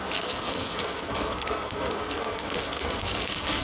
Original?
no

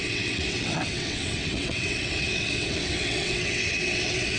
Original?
no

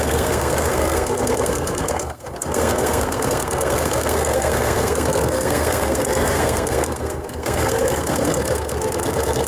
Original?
no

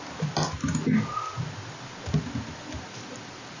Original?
yes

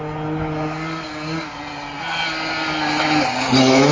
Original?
yes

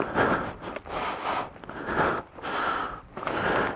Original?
yes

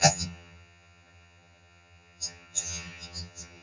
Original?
no